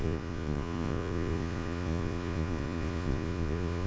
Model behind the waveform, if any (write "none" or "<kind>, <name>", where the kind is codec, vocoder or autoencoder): vocoder, Vocos